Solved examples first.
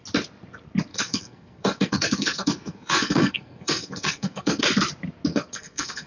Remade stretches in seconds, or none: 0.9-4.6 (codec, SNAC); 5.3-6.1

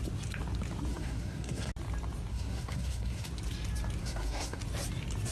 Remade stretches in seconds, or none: 0.9-1.7 (codec, SNAC); 2.3-3.3; 4.0-4.6

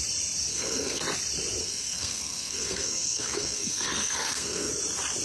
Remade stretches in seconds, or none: 0.5-1.0 (codec, SNAC); 1.6-4.7